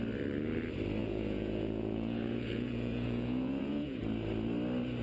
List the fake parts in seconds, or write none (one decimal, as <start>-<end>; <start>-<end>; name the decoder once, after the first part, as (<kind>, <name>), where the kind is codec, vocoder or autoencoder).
1.0-4.0 (vocoder, Vocos)